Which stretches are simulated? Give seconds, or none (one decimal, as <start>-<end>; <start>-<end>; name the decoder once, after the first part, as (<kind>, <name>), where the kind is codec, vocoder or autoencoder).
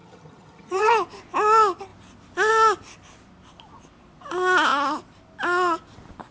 0.0-0.9 (vocoder, HiFi-GAN)